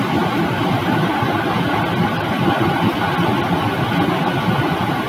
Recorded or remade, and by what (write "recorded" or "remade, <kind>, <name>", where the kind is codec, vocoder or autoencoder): recorded